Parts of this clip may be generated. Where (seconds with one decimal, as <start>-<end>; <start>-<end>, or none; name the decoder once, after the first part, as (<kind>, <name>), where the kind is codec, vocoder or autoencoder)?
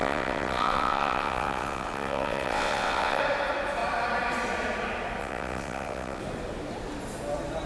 0.0-3.2 (vocoder, WaveNeXt); 5.2-6.2